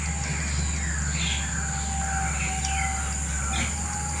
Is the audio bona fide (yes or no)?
yes